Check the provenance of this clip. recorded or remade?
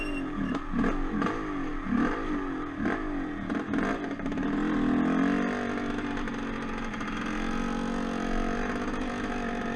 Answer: recorded